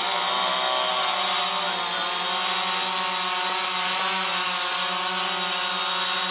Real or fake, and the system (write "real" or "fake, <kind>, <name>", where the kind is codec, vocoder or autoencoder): real